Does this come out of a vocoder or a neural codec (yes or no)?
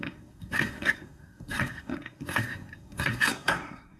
yes